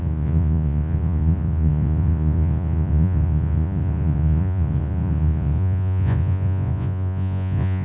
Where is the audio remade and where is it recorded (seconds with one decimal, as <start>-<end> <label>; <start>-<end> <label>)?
0.0-7.8 remade